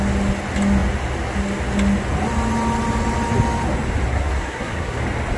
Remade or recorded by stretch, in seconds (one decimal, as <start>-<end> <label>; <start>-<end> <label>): 0.0-4.1 recorded; 4.1-5.0 remade; 5.0-5.4 recorded